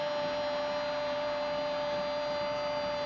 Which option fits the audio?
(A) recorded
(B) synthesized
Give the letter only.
A